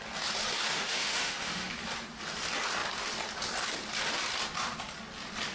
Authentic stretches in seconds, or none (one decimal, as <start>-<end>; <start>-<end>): 0.0-0.7; 1.7-5.5